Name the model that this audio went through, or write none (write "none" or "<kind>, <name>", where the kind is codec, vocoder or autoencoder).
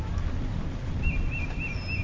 none